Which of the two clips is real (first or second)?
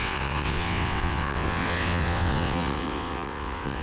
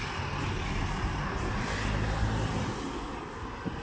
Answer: second